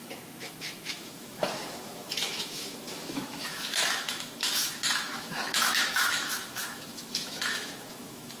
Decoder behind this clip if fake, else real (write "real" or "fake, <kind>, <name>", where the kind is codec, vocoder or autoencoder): fake, autoencoder, DAC-VAE